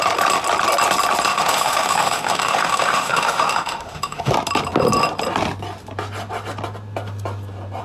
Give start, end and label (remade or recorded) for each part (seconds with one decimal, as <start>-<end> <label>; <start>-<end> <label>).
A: 0.0-1.3 recorded; 1.3-4.3 remade; 4.3-7.8 recorded